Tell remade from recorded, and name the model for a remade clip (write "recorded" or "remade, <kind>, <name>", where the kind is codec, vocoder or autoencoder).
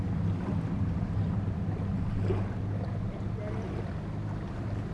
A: recorded